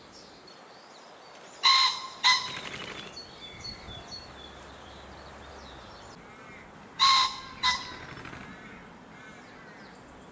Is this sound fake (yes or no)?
no